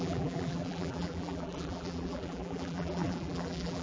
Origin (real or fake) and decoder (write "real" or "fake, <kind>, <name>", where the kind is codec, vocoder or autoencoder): fake, vocoder, BigVGAN v2